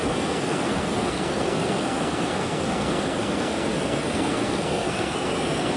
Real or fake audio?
fake